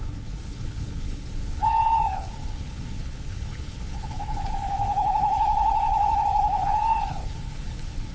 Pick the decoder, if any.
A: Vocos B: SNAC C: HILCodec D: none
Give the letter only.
C